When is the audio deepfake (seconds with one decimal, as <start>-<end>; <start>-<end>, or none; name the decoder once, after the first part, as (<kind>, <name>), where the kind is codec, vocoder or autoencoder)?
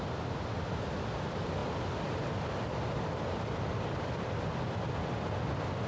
none